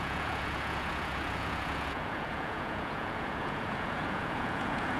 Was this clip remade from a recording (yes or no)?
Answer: yes